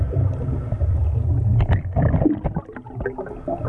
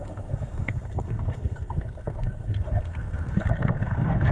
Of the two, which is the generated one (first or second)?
second